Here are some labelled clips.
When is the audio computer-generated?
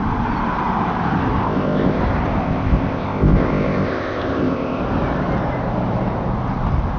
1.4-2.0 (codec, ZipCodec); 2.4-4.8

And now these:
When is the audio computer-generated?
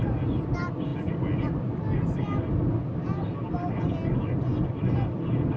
none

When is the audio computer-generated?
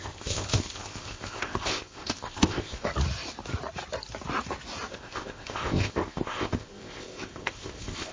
0.0-2.9 (codec, ZipCodec); 4.9-8.1